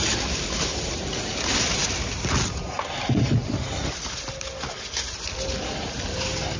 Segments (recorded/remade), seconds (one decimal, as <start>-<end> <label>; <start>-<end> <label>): 0.0-6.6 recorded